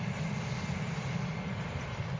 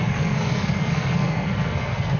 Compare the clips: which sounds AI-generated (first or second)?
second